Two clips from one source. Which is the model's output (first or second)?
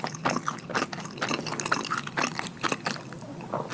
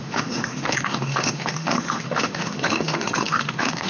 second